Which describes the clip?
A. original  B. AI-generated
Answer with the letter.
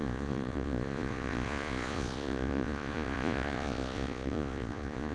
B